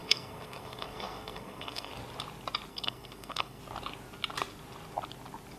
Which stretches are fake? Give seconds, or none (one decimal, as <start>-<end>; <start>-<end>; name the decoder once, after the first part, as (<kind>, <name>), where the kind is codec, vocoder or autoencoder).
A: 0.0-1.9 (codec, SNAC); 2.7-3.6